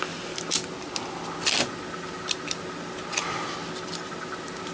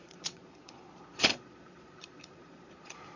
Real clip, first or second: first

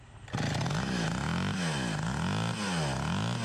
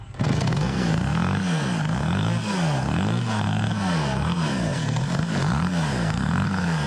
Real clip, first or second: first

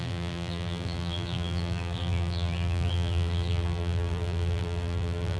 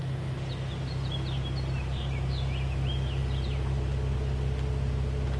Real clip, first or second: second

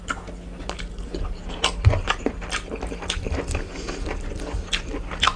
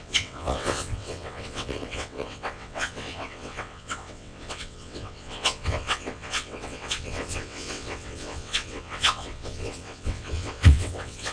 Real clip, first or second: first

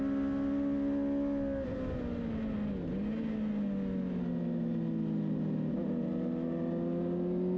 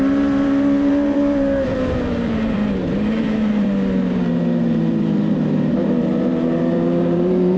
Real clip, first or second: first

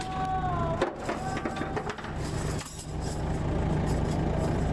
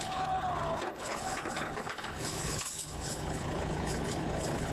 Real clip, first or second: first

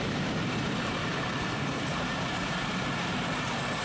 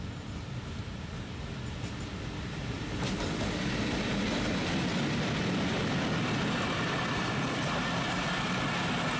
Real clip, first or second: second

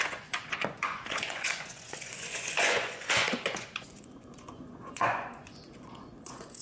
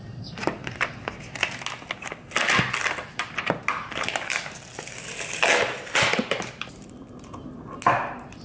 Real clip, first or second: second